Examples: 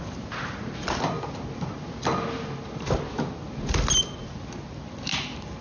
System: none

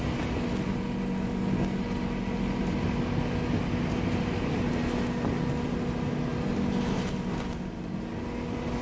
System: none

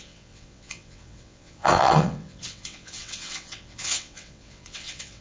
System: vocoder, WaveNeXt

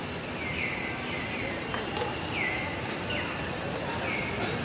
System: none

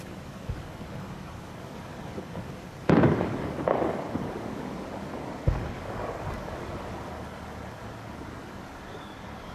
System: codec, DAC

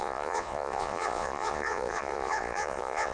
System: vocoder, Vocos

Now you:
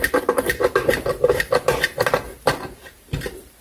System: none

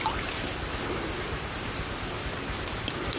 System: none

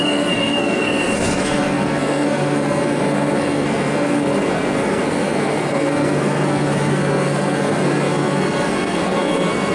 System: codec, SNAC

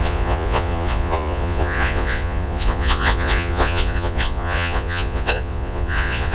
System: vocoder, Vocos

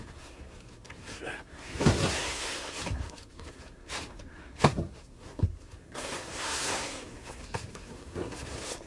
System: codec, SNAC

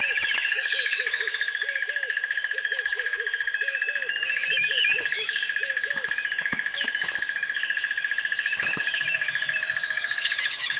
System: autoencoder, DAC-VAE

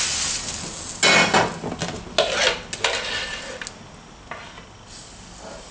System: none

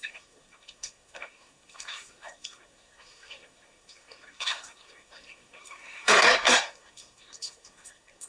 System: codec, SNAC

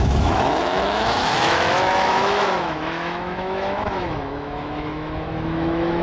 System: autoencoder, DAC-VAE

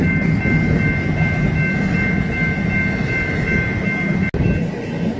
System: none